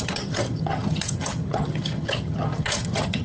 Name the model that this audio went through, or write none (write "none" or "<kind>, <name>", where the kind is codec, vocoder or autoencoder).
vocoder, HiFi-GAN